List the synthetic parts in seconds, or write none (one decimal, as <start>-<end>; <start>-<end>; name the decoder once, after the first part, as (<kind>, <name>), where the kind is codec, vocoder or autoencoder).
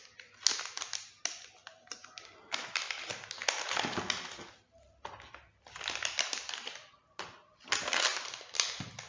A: 1.6-2.2 (vocoder, BigVGAN v2)